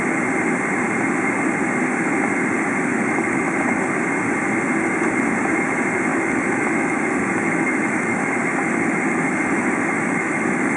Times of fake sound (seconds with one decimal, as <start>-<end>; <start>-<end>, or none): 2.9-3.8; 6.1-10.8